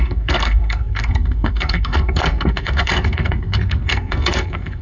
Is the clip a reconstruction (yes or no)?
yes